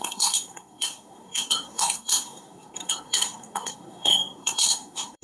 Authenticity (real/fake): fake